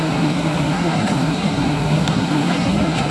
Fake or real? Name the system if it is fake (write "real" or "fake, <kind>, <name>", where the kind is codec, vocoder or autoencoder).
fake, codec, SNAC